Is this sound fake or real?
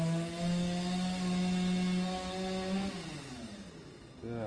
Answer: real